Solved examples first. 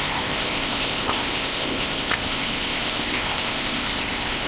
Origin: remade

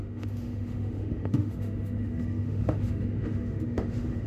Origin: remade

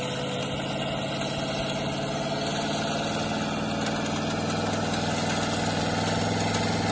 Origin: recorded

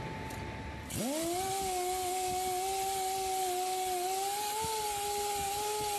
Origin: recorded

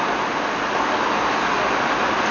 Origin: recorded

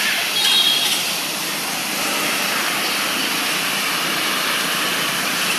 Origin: recorded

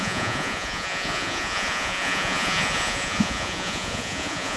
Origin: remade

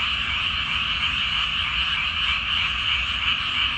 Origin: recorded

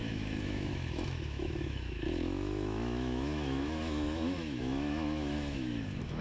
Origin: remade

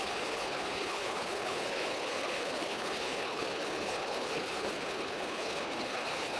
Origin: remade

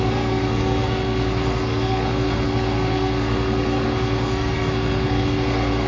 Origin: remade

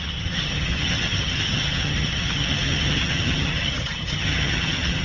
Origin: remade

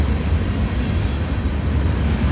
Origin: recorded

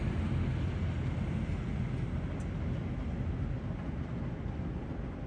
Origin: recorded